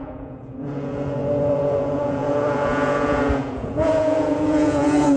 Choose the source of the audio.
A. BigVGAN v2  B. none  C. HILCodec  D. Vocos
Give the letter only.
D